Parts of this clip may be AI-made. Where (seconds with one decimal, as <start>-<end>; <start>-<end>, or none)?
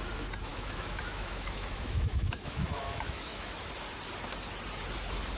0.5-3.7